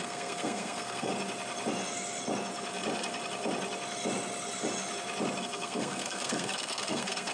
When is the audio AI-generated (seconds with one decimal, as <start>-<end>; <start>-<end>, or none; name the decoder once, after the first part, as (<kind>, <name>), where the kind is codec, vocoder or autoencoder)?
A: 0.0-1.1 (codec, SNAC); 5.4-7.3